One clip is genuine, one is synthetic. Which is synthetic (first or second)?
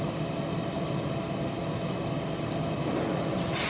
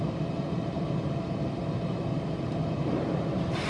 second